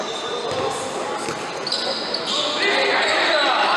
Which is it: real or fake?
real